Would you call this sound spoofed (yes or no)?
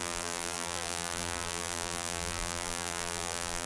yes